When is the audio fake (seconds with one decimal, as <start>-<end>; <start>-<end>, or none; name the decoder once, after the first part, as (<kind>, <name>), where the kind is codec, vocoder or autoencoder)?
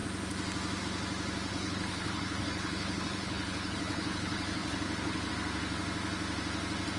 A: 1.5-5.3 (codec, HILCodec)